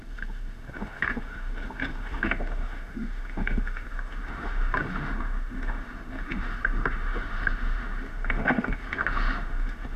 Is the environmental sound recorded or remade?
remade